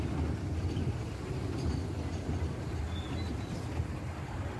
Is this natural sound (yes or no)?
yes